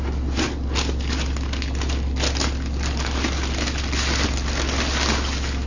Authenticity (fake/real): real